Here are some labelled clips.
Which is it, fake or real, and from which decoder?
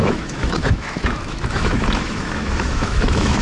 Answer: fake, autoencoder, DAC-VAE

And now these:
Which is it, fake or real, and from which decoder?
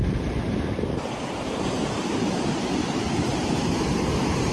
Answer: real